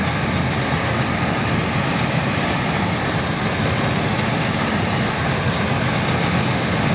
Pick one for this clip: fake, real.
real